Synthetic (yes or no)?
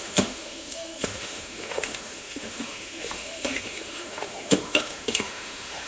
yes